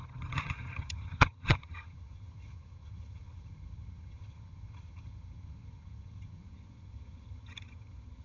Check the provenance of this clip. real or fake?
fake